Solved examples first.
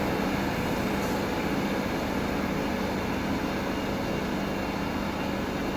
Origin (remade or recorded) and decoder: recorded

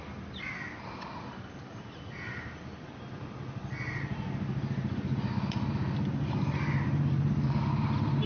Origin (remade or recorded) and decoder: recorded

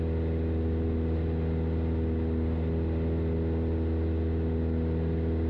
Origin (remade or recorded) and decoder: recorded